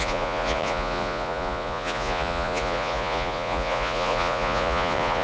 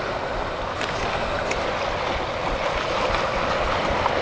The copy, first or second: first